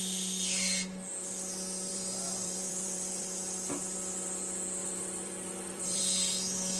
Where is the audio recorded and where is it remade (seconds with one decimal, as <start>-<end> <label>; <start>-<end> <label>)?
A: 0.0-1.9 recorded; 1.9-3.3 remade; 3.3-4.8 recorded; 4.8-6.0 remade; 6.0-6.8 recorded